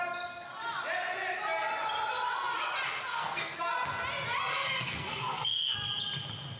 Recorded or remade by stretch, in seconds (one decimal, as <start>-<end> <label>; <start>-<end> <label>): 0.0-3.1 recorded; 3.1-3.6 remade; 3.6-4.5 recorded; 4.5-5.9 remade; 5.9-6.6 recorded